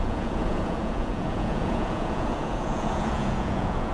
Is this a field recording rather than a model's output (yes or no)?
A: no